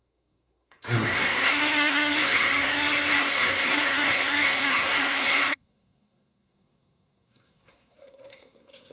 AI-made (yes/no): yes